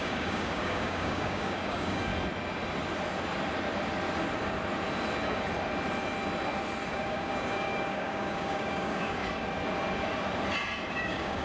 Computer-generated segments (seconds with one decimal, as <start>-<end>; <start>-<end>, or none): 0.0-2.1; 6.9-9.2; 10.9-11.4